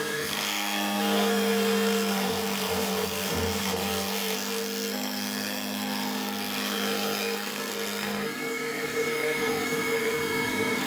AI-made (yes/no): yes